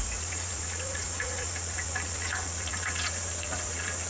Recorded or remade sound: remade